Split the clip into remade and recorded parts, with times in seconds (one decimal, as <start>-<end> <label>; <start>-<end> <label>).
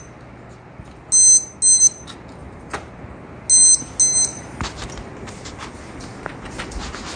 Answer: 0.0-2.4 recorded; 2.4-3.0 remade; 3.0-4.3 recorded; 4.3-4.9 remade; 4.9-7.2 recorded